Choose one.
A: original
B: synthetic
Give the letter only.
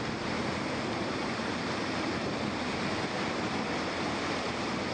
B